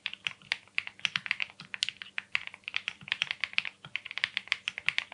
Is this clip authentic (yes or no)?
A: yes